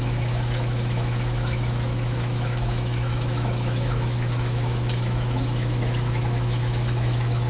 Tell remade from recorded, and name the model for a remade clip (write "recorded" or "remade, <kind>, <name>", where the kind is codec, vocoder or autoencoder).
remade, autoencoder, DAC-VAE